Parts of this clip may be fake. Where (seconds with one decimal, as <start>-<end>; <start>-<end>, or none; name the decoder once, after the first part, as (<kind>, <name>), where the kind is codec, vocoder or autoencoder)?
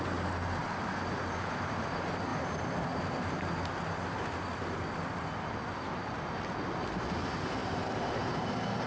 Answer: 0.6-1.8 (vocoder, BigVGAN v2); 2.3-2.8; 7.6-8.5